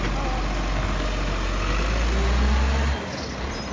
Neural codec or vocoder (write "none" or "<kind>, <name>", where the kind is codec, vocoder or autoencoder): none